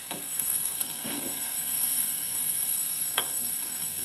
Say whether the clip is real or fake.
fake